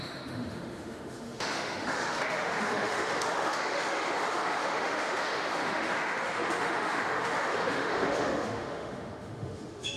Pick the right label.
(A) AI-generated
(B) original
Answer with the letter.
A